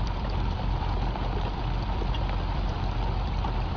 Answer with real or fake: fake